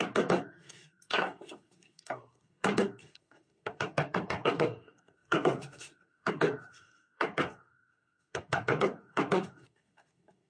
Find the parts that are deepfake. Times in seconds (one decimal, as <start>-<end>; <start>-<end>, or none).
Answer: 0.0-10.5